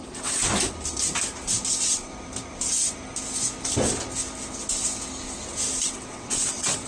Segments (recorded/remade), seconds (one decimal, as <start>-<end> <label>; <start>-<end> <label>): 0.0-0.4 remade; 0.4-1.7 recorded; 1.7-2.1 remade; 2.1-5.8 recorded; 5.8-6.9 remade